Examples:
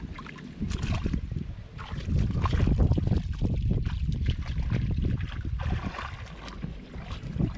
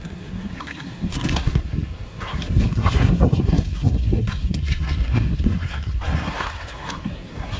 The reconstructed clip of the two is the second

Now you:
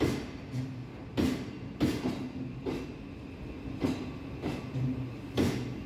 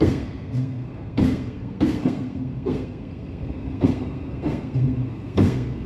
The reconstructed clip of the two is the second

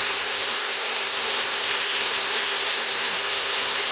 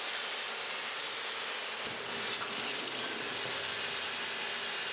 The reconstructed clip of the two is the first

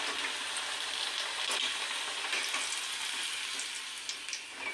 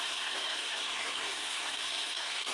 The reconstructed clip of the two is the second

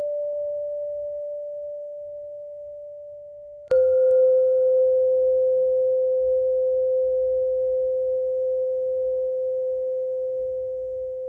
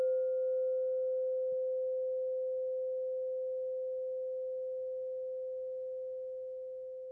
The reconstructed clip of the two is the first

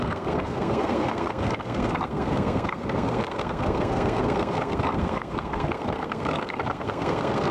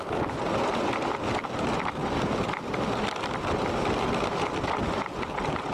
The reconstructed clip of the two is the first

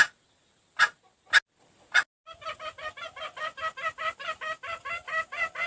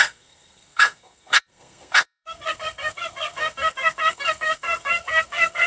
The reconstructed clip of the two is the second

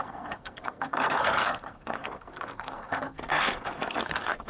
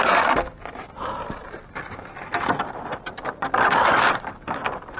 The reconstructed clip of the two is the first